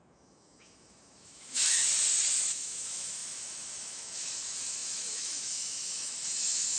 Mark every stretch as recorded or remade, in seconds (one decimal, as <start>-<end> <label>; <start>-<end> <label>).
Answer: 0.0-1.8 remade; 1.8-2.5 recorded; 2.5-6.8 remade